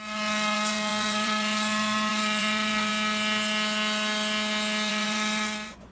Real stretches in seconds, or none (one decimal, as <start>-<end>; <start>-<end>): 2.9-4.9